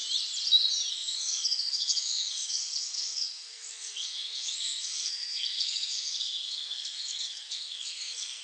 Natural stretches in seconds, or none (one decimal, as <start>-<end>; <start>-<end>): 0.0-0.9